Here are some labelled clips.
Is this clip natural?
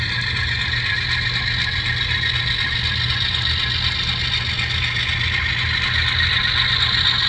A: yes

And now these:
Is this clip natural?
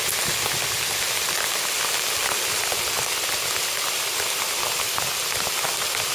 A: yes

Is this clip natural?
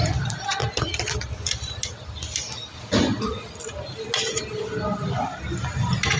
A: yes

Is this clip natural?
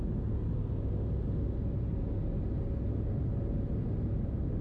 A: yes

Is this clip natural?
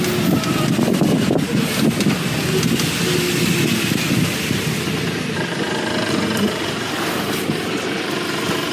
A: yes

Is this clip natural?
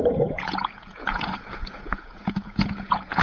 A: no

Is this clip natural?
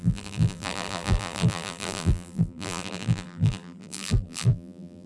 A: no